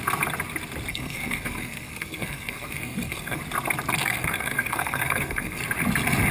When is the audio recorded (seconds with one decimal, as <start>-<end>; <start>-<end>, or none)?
0.0-0.9; 3.4-4.0; 5.6-6.3